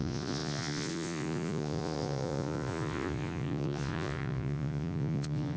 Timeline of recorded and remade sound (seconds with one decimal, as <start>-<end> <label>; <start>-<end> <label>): 0.0-5.6 remade